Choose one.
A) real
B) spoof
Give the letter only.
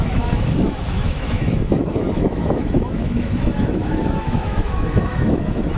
B